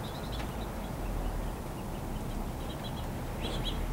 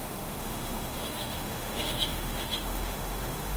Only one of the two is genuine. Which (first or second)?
first